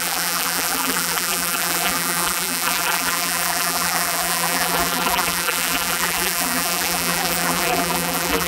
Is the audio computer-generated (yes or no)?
yes